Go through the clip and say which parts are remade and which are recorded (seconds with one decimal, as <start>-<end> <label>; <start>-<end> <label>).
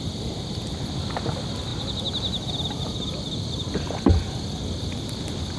0.0-5.6 recorded